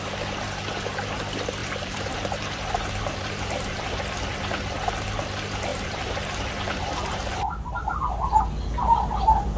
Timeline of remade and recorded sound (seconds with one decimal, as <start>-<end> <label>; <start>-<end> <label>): 0.0-1.6 recorded; 1.6-3.9 remade; 3.9-5.7 recorded; 5.7-8.4 remade; 8.4-9.6 recorded